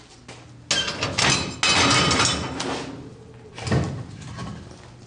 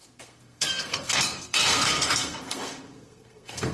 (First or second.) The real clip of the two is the first